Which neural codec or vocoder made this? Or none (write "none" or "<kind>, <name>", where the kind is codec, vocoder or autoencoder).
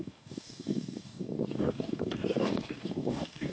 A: codec, DAC